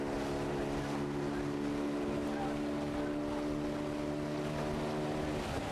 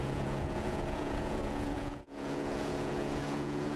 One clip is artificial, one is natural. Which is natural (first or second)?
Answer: first